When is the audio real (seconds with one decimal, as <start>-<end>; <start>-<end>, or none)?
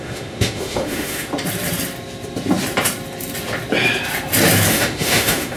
1.3-4.7